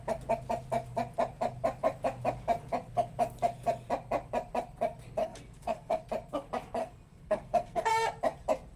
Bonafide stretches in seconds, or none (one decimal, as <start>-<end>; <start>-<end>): 0.0-5.2; 6.0-6.8; 7.9-8.8